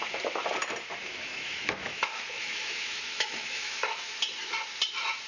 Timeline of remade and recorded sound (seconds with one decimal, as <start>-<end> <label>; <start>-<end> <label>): 0.0-1.0 recorded; 1.0-4.2 remade; 4.2-5.3 recorded